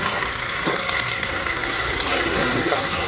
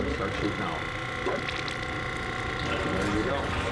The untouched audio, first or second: second